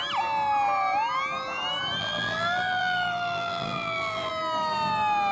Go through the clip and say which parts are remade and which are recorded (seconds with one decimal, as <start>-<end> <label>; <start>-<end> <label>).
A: 0.0-2.0 recorded; 2.0-4.3 remade; 4.3-5.3 recorded